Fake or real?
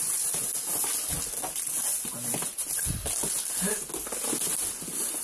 real